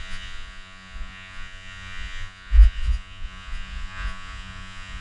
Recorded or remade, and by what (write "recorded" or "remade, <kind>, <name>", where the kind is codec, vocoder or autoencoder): remade, vocoder, Vocos